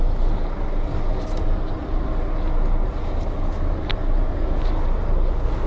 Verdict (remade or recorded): recorded